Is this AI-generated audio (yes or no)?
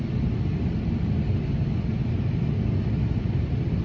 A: no